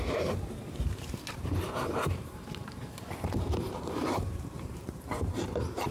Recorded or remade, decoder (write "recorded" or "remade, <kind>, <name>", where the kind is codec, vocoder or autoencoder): remade, vocoder, BigVGAN v2